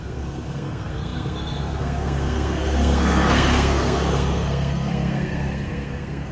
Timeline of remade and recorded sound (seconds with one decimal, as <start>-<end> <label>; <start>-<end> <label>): 0.0-6.3 remade